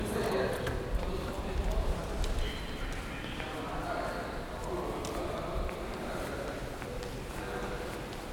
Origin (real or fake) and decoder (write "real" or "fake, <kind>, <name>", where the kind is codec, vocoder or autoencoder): fake, vocoder, BigVGAN v2